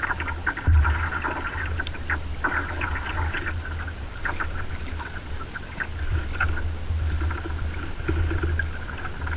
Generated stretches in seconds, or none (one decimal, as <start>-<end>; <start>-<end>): none